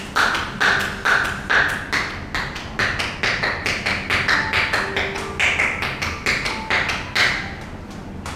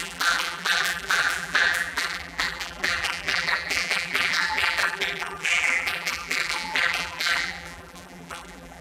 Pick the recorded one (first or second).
first